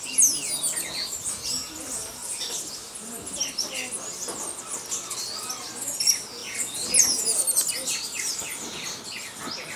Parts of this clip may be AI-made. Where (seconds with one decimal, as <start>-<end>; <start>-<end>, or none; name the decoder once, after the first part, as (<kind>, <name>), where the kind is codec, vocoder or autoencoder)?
none